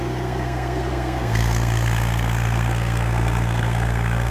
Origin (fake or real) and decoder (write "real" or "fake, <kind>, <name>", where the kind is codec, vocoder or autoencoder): fake, codec, SNAC